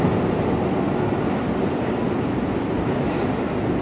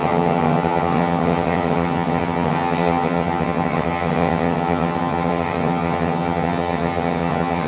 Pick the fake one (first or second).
second